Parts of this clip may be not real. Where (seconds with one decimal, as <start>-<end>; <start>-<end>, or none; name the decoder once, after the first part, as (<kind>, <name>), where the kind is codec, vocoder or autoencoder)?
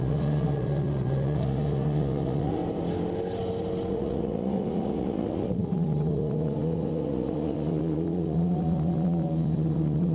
0.0-2.6 (vocoder, Vocos); 3.9-10.1